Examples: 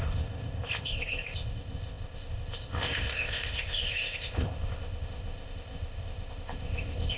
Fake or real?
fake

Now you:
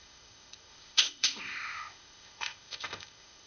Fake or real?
fake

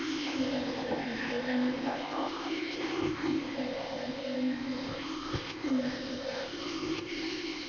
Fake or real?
fake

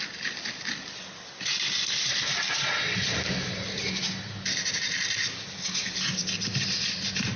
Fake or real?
real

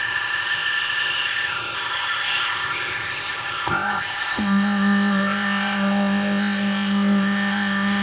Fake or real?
fake